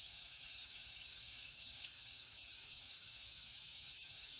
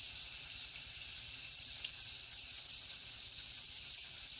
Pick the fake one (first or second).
first